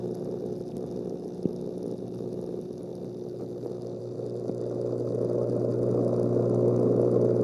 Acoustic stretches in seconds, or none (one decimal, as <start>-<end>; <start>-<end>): 0.0-7.4